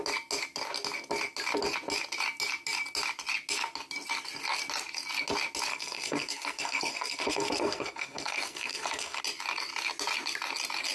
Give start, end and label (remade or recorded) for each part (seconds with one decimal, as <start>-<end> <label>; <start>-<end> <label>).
0.0-5.7 recorded; 5.7-9.2 remade; 9.2-10.9 recorded